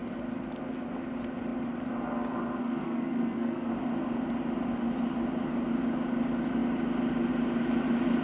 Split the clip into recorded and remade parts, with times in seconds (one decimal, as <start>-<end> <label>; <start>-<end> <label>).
0.0-2.6 recorded; 2.6-3.7 remade; 3.7-8.2 recorded